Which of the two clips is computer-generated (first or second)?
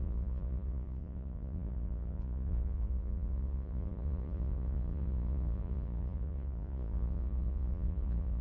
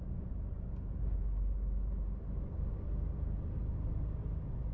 first